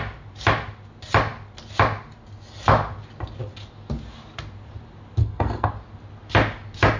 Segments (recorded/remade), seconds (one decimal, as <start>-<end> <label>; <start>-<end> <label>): 0.0-5.2 recorded; 5.2-5.7 remade; 5.7-7.0 recorded